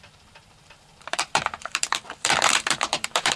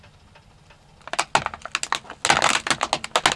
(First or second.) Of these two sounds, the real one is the second